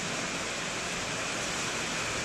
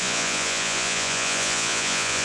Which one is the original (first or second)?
first